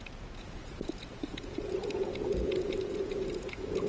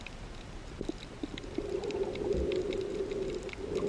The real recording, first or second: second